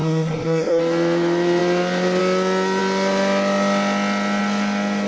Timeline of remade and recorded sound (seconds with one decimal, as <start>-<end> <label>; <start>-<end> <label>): 0.0-0.8 remade; 0.8-5.1 recorded